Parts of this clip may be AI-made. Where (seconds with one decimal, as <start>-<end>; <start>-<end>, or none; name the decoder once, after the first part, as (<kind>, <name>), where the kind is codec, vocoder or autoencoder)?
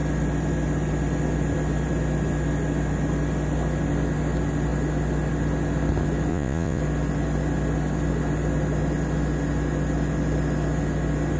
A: 6.3-6.8 (vocoder, Vocos)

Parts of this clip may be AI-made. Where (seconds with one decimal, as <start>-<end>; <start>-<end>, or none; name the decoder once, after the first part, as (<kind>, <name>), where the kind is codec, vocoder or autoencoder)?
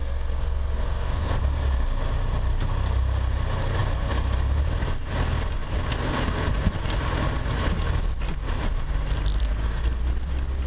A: 0.0-1.4 (codec, SNAC); 9.4-10.0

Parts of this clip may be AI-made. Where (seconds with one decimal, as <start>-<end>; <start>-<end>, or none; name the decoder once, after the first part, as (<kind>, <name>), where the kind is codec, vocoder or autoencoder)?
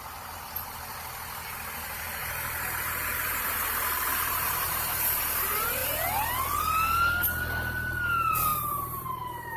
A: 2.2-4.7 (vocoder, BigVGAN v2); 8.5-9.6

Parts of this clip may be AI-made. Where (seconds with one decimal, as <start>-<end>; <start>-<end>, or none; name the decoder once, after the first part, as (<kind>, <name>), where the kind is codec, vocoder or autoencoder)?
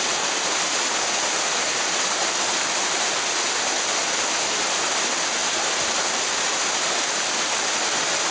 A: none